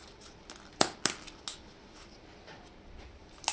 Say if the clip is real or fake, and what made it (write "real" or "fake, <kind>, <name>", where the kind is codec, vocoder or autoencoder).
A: real